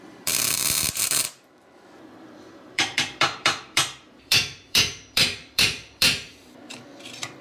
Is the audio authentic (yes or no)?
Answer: no